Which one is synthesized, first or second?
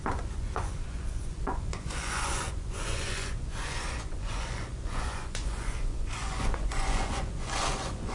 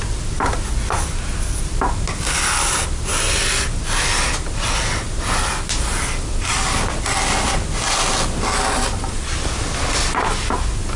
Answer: first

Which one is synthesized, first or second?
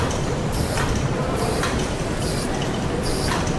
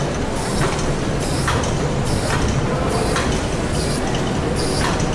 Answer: first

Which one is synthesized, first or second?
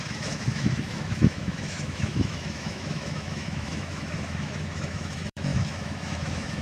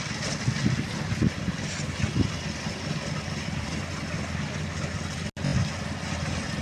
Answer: first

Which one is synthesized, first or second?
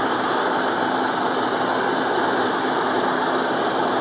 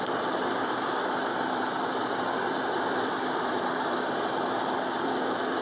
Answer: second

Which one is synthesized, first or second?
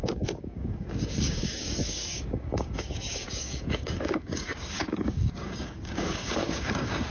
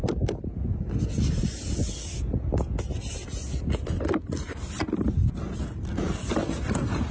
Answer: first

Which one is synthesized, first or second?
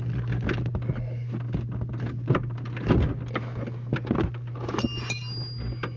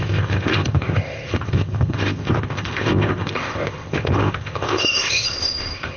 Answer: second